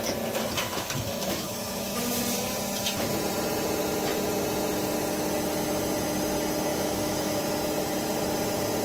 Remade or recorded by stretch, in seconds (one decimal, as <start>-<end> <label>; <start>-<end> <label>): 0.0-0.6 recorded; 0.6-2.1 remade; 2.1-6.7 recorded; 6.7-7.4 remade; 7.4-8.8 recorded